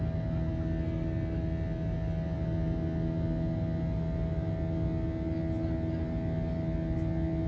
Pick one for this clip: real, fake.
real